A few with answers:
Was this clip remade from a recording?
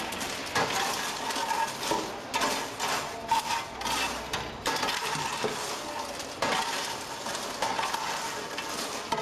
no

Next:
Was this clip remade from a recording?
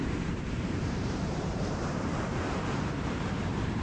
yes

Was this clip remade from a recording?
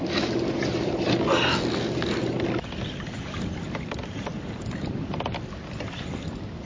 no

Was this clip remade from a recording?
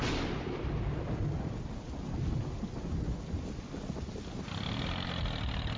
no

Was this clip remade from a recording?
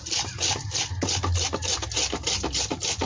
no